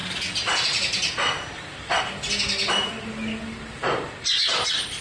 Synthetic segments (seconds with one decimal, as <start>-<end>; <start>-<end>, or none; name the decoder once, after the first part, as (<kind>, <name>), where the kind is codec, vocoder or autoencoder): none